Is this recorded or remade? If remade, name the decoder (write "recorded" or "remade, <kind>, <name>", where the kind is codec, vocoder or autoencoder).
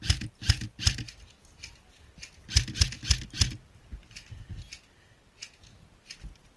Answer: recorded